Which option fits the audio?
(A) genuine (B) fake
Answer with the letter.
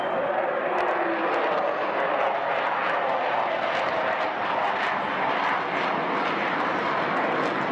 A